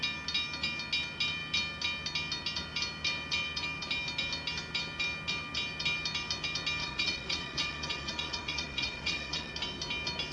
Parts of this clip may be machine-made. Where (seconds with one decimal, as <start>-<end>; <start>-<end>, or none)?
6.8-9.5